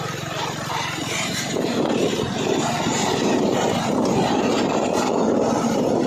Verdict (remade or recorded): remade